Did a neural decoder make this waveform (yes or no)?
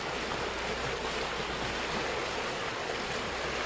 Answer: no